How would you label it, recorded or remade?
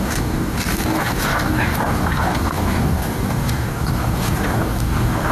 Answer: remade